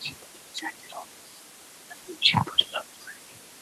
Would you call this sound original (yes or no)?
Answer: yes